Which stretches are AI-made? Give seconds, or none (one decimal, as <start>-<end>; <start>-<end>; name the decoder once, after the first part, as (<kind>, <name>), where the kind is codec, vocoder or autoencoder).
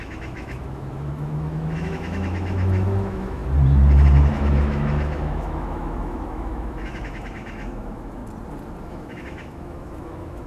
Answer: 0.0-3.4 (autoencoder, DAC-VAE); 4.3-8.2; 8.8-10.5